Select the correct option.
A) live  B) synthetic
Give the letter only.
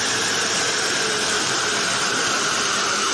B